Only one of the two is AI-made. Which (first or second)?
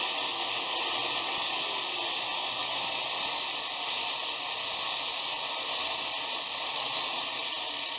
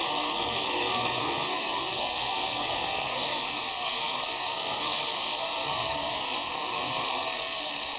second